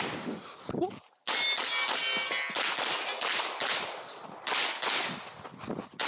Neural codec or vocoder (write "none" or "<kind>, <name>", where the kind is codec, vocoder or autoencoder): none